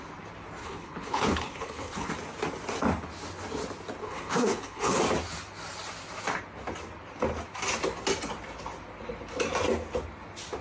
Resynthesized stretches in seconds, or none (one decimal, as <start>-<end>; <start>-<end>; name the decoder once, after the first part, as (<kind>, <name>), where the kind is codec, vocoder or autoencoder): 0.6-2.1 (codec, HILCodec); 4.0-5.0